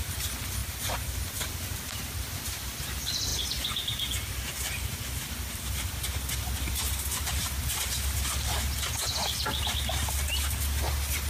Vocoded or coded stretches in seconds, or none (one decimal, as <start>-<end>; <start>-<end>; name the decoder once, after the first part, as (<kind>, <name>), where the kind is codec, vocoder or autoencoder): 0.6-1.5 (vocoder, BigVGAN v2)